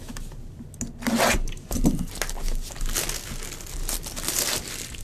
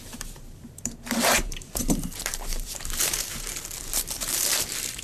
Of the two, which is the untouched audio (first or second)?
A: first